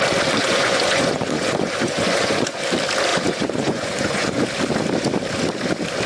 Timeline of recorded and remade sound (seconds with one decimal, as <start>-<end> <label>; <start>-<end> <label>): 0.0-0.4 recorded; 0.4-2.6 remade; 2.6-3.1 recorded; 3.1-4.4 remade; 4.4-6.1 recorded